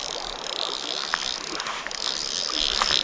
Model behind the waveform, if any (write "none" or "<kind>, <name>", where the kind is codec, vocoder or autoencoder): none